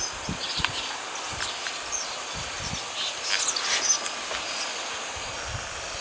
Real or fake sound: real